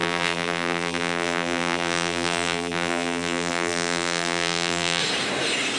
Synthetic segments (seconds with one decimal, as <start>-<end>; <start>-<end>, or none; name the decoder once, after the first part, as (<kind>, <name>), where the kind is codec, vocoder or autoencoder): 0.0-5.0 (vocoder, BigVGAN v2)